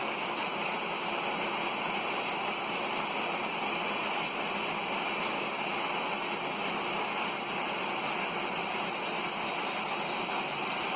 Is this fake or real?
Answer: real